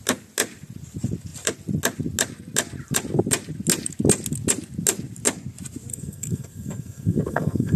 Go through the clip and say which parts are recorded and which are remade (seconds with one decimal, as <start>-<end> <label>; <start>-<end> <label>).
0.0-5.9 recorded; 5.9-7.8 remade